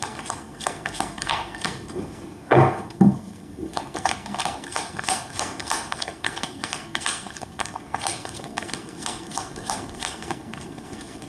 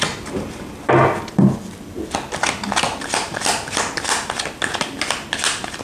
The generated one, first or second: first